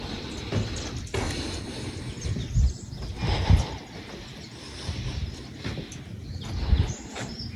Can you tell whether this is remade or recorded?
recorded